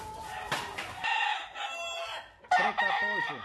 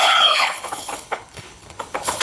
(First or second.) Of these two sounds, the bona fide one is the first